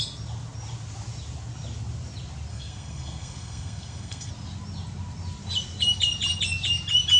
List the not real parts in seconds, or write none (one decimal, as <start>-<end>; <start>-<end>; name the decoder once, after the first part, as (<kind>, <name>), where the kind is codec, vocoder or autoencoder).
2.5-4.3 (codec, SNAC)